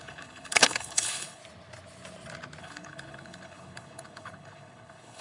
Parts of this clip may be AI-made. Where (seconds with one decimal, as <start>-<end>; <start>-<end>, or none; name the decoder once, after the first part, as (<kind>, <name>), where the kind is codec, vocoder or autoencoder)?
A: 0.0-1.4 (codec, HILCodec); 2.6-5.2